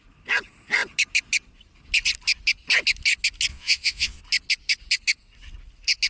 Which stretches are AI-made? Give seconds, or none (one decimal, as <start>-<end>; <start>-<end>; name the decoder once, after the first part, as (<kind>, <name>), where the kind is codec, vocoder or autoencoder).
3.5-4.2 (vocoder, Vocos)